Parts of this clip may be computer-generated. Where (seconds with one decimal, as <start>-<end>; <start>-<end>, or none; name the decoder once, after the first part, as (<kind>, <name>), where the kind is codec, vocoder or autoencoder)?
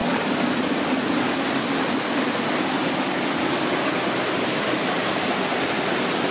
none